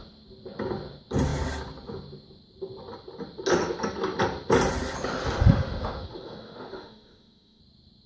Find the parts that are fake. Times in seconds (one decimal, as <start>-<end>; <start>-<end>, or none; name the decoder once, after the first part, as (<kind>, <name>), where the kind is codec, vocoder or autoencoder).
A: 5.4-7.6 (autoencoder, DAC-VAE)